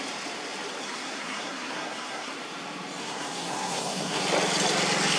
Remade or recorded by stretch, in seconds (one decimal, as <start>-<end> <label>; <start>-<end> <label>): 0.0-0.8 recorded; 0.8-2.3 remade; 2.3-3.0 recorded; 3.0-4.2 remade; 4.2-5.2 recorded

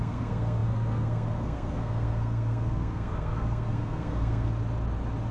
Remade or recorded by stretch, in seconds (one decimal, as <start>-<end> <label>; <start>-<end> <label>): 0.0-4.5 remade; 4.5-5.3 recorded

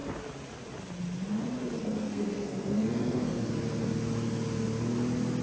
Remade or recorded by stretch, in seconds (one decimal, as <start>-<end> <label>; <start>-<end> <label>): 0.0-1.8 recorded; 1.8-3.5 remade; 3.5-5.4 recorded

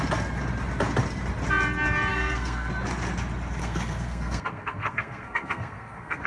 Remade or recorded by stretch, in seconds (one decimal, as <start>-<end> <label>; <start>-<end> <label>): 0.0-2.1 recorded; 2.1-2.7 remade; 2.7-3.6 recorded; 3.6-6.3 remade

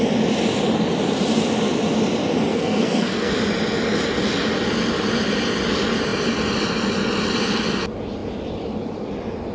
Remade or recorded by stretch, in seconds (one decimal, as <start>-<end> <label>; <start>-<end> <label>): 0.0-2.5 recorded; 2.5-3.3 remade; 3.3-9.5 recorded

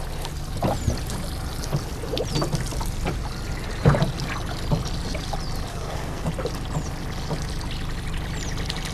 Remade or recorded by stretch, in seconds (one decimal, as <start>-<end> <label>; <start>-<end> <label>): 0.0-5.7 recorded; 5.7-6.3 remade; 6.3-8.9 recorded